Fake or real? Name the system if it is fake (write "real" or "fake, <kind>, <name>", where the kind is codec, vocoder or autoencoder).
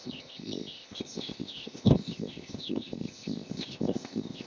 fake, codec, ZipCodec